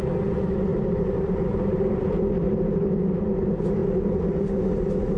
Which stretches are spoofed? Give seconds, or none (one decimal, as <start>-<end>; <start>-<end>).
0.7-2.2